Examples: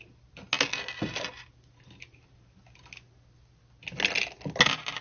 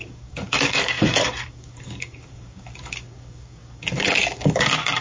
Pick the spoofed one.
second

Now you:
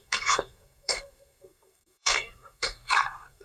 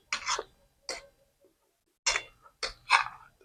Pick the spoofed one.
first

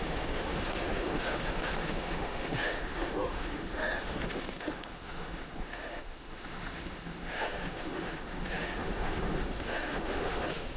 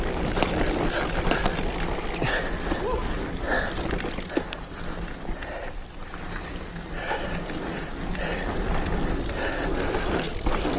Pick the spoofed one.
first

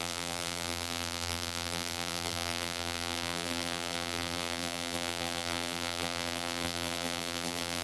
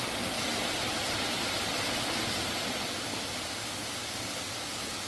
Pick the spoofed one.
first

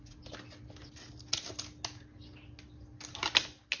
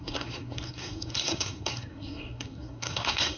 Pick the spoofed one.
second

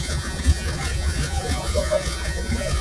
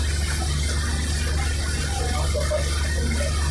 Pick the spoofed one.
first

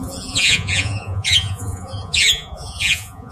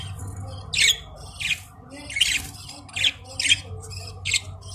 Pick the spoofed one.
first